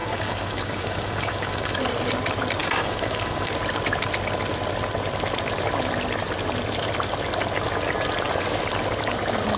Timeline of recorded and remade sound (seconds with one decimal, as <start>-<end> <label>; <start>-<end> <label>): 0.0-1.8 remade; 1.8-2.6 recorded; 2.6-3.5 remade; 3.5-9.6 recorded